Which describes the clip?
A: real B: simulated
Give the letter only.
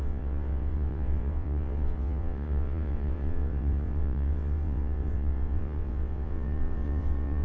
B